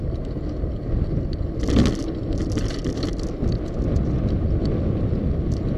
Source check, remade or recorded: recorded